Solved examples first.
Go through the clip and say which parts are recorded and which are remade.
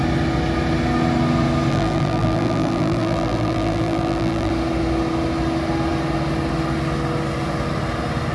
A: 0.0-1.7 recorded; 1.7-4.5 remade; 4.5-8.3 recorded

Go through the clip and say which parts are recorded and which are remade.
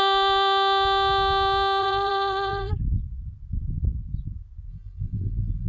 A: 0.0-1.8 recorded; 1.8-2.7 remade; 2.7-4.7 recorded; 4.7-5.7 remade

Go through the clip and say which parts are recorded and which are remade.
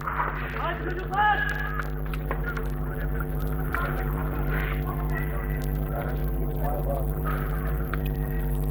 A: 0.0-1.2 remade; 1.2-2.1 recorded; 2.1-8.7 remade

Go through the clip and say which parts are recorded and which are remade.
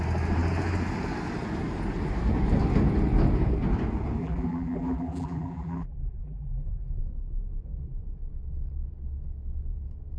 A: 0.0-4.2 recorded; 4.2-7.0 remade; 7.0-10.2 recorded